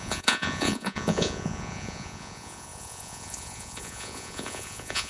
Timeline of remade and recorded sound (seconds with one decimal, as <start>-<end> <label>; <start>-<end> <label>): 0.0-5.1 remade